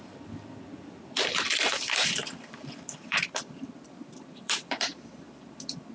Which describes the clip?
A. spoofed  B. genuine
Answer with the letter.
A